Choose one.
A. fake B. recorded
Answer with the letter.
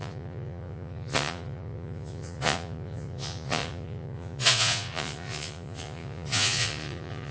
A